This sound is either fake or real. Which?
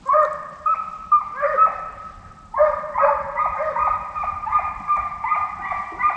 real